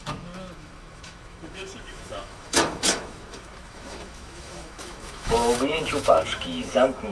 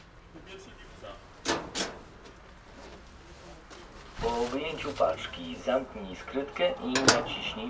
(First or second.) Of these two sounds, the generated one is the first